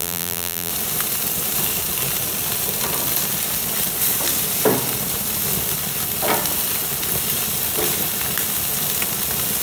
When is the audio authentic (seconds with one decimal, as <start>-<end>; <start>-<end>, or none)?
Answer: 0.7-9.6

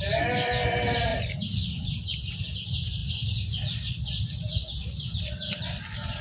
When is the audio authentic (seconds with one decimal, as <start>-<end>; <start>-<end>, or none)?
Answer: 0.0-6.2